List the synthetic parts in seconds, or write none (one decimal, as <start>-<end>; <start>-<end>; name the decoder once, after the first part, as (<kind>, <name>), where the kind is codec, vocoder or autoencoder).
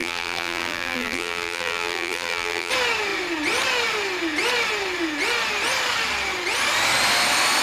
0.0-2.7 (vocoder, BigVGAN v2)